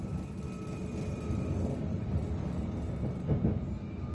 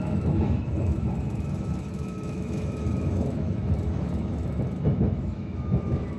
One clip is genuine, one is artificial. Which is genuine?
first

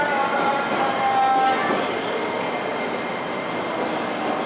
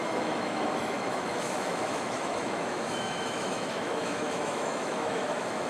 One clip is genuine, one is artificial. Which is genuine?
first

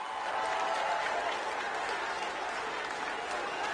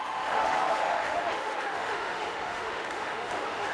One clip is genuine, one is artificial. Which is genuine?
first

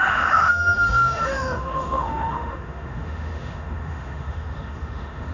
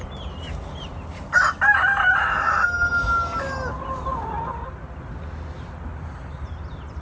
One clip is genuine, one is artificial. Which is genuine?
second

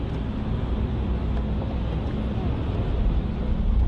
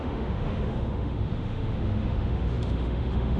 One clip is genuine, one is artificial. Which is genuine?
first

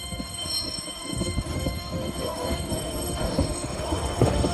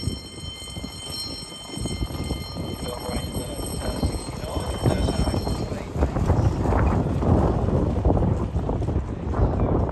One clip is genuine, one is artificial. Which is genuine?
second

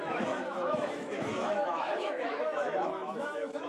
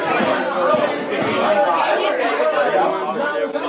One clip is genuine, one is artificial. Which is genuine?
second